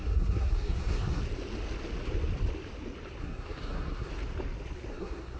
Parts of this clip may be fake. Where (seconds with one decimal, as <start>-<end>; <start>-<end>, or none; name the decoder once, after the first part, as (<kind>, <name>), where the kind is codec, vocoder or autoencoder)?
0.0-1.2 (codec, SNAC); 3.2-4.1; 4.9-5.4